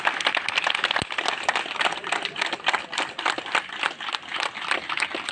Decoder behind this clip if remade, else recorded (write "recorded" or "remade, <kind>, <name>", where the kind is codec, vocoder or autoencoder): recorded